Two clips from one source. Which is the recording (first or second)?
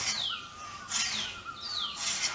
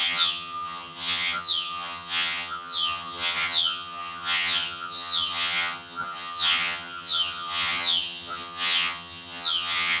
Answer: first